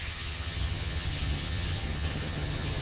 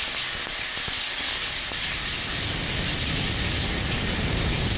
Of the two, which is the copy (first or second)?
first